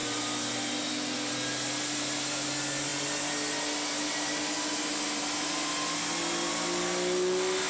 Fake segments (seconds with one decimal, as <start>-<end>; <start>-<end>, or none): none